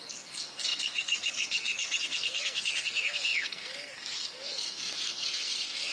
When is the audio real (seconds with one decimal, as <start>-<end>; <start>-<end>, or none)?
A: none